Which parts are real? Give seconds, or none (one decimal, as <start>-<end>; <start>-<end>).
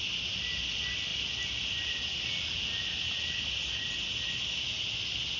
0.0-5.4